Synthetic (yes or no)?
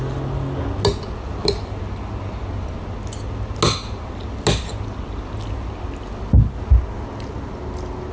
no